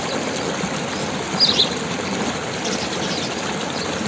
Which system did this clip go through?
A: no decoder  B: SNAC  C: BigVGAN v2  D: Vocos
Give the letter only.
A